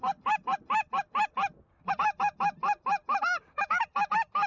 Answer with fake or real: real